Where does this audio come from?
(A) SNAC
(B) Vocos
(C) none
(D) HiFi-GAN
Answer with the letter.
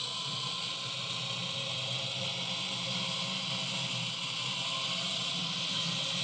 C